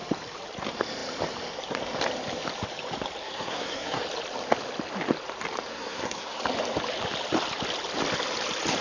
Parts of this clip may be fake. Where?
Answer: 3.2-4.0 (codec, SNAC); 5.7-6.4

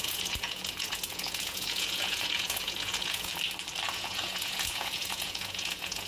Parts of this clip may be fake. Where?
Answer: 0.0-3.3 (vocoder, Vocos); 3.9-6.1

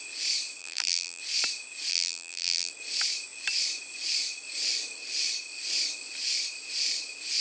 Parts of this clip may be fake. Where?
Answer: 0.6-1.2 (vocoder, BigVGAN v2); 1.9-2.7

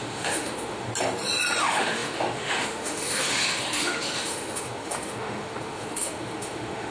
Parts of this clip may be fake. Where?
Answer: 0.0-0.9 (autoencoder, DAC-VAE); 1.6-6.9

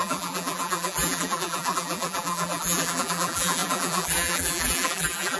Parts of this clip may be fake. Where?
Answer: 0.0-5.4 (vocoder, BigVGAN v2)

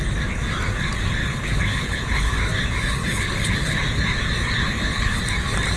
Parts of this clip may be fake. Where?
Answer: 1.2-2.4 (codec, HILCodec); 3.0-3.8; 4.6-5.2

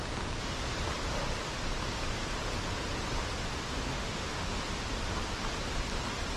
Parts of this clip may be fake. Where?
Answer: 3.9-4.6 (autoencoder, DAC-VAE)

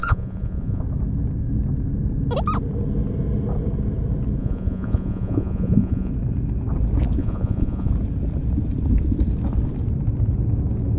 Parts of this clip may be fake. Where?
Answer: 0.0-0.8 (vocoder, Vocos); 4.4-6.1; 7.2-7.9